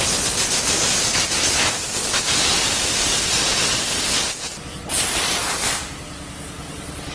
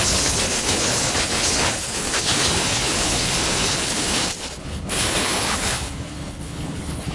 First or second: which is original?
first